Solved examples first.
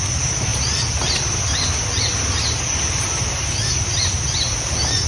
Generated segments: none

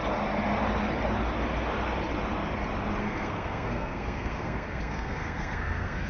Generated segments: 3.0-6.1 (codec, SNAC)

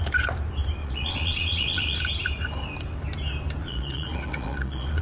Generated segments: 0.8-2.0 (vocoder, Vocos); 3.6-5.0

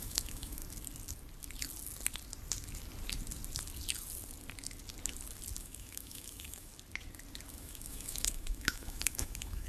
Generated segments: 0.0-0.6 (autoencoder, DAC-VAE); 5.6-6.7; 7.5-9.7

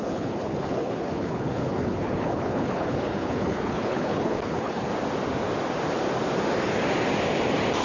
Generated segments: 0.0-4.9 (codec, HILCodec)

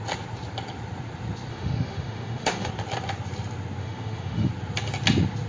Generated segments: 1.5-2.7 (autoencoder, DAC-VAE); 3.8-4.5

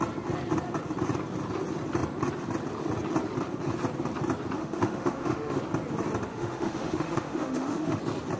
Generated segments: 4.6-5.6 (autoencoder, DAC-VAE); 6.3-8.0

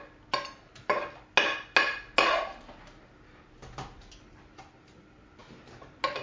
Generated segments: none